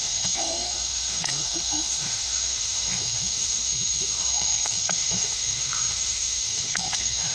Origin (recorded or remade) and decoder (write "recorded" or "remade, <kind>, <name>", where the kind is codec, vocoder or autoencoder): remade, autoencoder, DAC-VAE